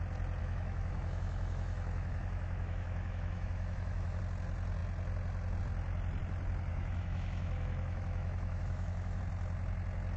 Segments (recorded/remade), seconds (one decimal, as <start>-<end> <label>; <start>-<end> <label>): 0.0-0.4 recorded; 0.4-4.2 remade; 4.2-6.7 recorded; 6.7-9.2 remade; 9.2-10.2 recorded